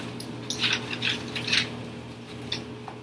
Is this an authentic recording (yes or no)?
yes